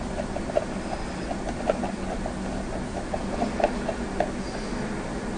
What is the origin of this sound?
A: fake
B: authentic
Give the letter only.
B